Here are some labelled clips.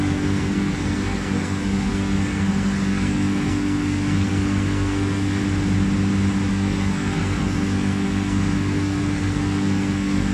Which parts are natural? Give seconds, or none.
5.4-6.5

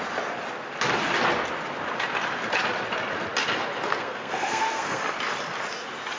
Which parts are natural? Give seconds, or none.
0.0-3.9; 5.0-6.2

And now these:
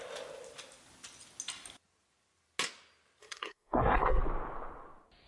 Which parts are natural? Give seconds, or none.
0.0-3.2; 4.2-5.3

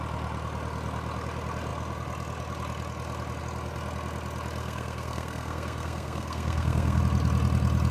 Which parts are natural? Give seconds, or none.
0.0-4.6; 7.0-7.9